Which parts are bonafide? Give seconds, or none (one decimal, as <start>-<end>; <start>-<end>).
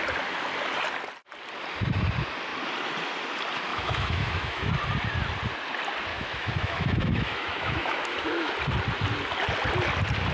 0.0-3.7; 4.7-6.1; 8.5-10.3